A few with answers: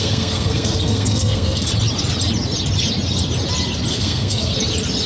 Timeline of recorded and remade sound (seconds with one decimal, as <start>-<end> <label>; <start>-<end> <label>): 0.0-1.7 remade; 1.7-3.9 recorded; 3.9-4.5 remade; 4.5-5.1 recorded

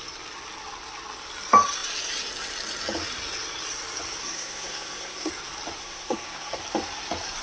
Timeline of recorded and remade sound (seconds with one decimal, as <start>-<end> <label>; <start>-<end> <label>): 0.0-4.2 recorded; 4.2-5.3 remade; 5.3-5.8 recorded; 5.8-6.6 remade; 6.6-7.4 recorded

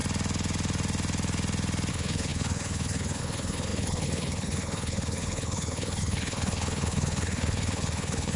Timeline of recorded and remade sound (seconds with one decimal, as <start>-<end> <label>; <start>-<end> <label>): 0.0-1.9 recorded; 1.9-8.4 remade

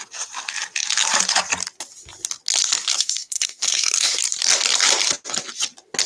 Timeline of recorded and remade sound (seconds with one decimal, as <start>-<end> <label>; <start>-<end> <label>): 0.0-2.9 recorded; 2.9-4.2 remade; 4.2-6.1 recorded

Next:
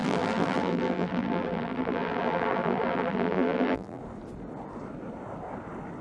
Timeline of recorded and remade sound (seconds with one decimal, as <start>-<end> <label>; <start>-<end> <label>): 0.0-4.0 remade; 4.0-6.0 recorded

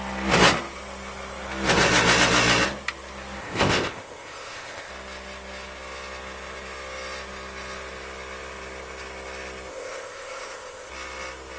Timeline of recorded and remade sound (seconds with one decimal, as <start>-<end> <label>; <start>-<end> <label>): 0.0-3.4 recorded; 3.4-4.9 remade; 4.9-9.7 recorded; 9.7-10.9 remade; 10.9-11.6 recorded

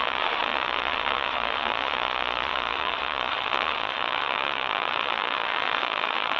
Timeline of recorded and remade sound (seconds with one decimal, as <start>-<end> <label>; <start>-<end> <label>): 0.0-6.4 remade

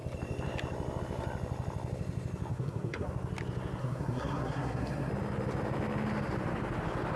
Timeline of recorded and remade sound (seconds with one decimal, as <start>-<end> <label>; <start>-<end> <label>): 0.0-2.5 recorded; 2.5-3.1 remade; 3.1-3.8 recorded; 3.8-5.1 remade; 5.1-7.2 recorded